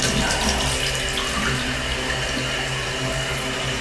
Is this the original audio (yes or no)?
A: yes